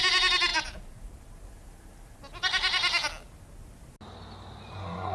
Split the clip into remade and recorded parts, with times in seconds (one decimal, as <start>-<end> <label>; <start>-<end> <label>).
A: 0.0-5.1 recorded